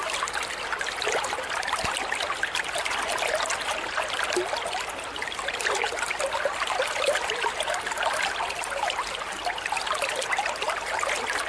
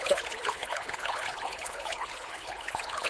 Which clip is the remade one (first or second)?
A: second